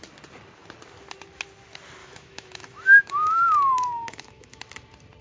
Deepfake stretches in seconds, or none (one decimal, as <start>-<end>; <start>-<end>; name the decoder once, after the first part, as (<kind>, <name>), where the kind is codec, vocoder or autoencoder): 2.0-4.6 (autoencoder, DAC-VAE)